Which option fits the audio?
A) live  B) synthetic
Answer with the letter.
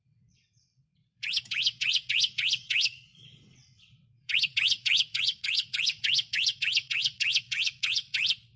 B